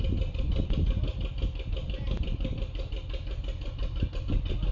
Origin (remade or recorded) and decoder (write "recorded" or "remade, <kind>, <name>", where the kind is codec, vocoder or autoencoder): recorded